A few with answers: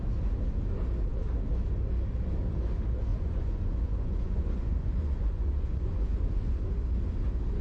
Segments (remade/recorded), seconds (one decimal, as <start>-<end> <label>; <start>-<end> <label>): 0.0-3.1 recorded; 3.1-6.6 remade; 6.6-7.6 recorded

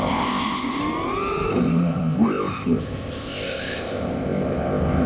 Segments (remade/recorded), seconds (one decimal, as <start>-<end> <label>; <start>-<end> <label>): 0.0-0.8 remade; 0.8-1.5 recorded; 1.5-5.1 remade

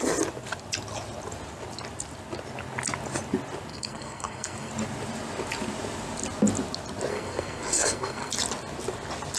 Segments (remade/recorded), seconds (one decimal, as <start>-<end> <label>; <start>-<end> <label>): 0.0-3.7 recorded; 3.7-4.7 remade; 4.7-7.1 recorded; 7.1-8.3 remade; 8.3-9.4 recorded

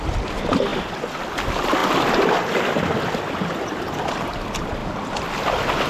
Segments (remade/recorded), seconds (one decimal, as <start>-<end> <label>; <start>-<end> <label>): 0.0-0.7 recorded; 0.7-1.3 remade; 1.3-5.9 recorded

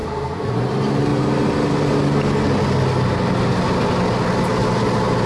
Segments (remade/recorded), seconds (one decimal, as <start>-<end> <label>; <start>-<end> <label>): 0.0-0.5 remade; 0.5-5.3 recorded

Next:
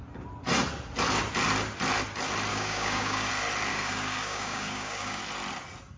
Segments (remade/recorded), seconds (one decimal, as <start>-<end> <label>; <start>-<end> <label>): 0.0-2.5 recorded; 2.5-3.3 remade; 3.3-3.7 recorded; 3.7-5.2 remade; 5.2-6.0 recorded

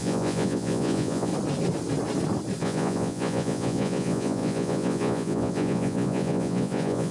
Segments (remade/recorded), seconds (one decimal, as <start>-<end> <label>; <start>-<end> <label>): 0.0-1.3 remade; 1.3-2.6 recorded; 2.6-7.1 remade